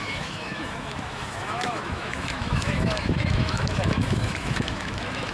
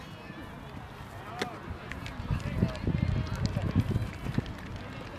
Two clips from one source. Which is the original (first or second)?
second